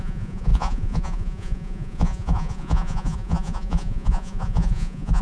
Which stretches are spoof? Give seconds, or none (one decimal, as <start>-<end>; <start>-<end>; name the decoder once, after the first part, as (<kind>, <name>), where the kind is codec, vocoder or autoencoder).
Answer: 0.0-5.2 (vocoder, Vocos)